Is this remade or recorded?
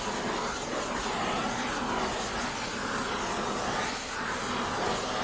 recorded